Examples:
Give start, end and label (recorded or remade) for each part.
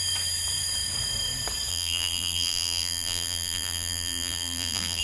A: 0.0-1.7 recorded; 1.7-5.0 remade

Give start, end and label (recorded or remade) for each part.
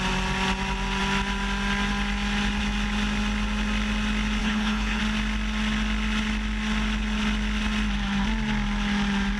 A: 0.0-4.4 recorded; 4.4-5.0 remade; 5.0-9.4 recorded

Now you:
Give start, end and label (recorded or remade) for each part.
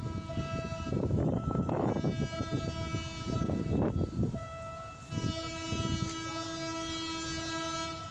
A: 0.0-1.2 recorded; 1.2-1.9 remade; 1.9-8.1 recorded